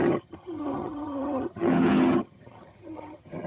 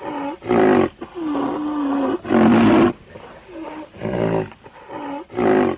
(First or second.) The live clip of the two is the second